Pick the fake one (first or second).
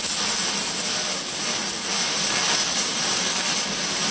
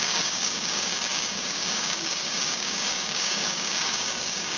second